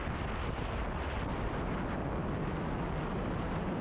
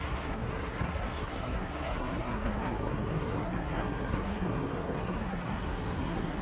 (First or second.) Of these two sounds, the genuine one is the first